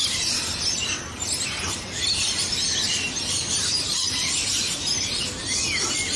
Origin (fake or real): real